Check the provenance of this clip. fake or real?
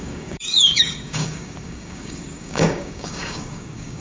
fake